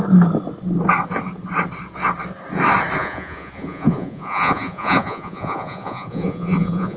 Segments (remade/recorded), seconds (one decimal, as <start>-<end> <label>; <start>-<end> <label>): 0.0-3.0 recorded; 3.0-7.0 remade